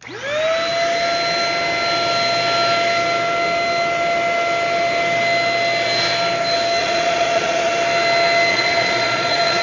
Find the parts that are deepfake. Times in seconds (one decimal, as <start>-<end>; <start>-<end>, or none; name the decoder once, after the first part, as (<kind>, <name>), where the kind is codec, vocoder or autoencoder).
6.8-7.7 (vocoder, Vocos); 8.5-9.6